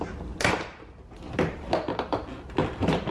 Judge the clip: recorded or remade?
recorded